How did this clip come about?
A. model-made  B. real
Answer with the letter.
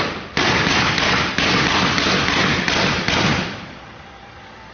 B